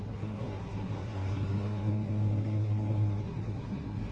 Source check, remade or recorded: remade